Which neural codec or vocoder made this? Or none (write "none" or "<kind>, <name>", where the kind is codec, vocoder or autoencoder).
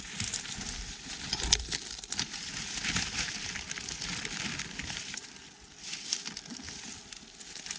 none